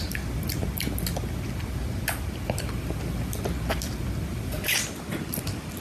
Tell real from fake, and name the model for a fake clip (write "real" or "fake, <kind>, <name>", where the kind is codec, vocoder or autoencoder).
real